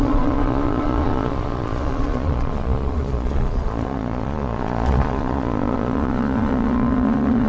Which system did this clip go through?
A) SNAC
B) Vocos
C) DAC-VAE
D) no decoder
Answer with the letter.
B